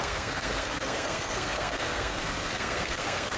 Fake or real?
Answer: fake